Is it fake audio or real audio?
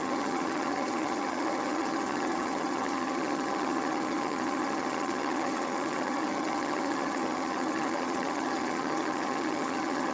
fake